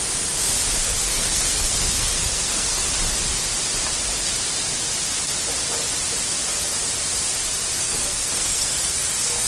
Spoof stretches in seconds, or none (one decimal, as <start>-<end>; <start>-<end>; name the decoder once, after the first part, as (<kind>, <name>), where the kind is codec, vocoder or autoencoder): 0.8-2.8 (codec, SNAC); 7.8-9.5